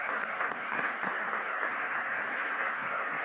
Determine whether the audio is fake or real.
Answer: fake